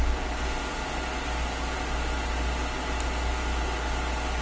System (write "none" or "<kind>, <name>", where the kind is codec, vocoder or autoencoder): none